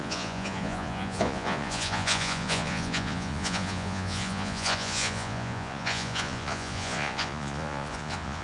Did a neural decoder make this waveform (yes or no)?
yes